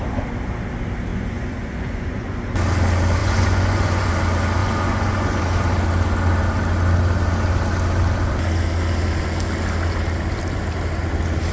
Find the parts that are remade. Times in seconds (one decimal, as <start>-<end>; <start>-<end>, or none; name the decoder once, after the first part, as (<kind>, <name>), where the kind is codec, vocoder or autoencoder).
1.1-2.4 (vocoder, Vocos); 3.2-4.1; 4.6-5.4